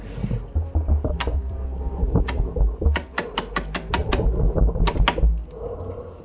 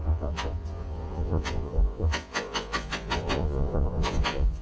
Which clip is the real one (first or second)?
first